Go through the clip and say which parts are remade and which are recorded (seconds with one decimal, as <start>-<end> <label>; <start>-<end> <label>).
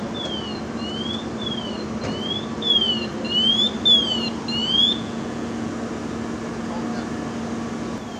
0.0-4.6 recorded; 4.6-5.7 remade; 5.7-8.2 recorded